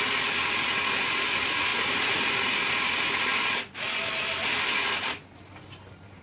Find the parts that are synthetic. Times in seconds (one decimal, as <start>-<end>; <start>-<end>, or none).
none